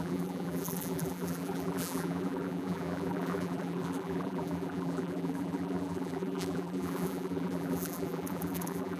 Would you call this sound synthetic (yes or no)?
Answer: yes